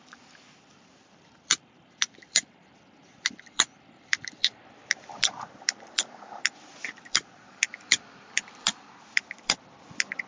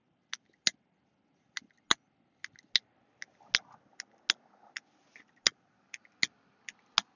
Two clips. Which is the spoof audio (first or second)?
first